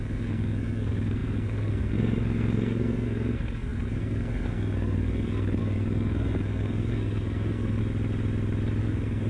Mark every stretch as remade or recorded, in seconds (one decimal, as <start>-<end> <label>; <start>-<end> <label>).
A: 0.0-7.8 remade; 7.8-8.8 recorded; 8.8-9.3 remade